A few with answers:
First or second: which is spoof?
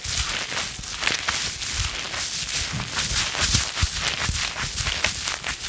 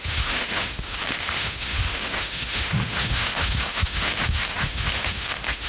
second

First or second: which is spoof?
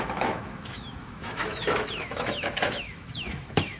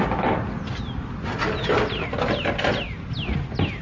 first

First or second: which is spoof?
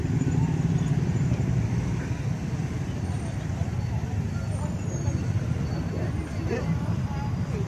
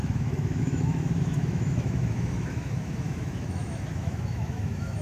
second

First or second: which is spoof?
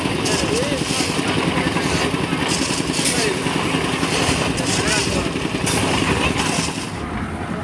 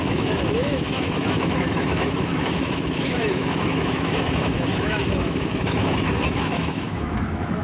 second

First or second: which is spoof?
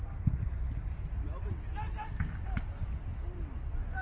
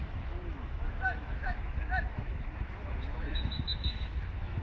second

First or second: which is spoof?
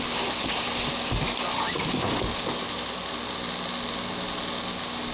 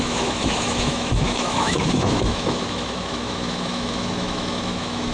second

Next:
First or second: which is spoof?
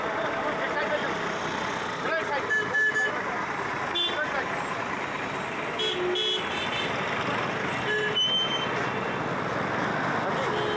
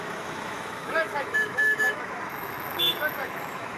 second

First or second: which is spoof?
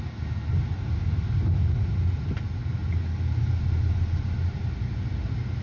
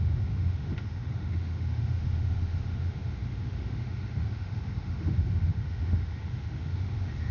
second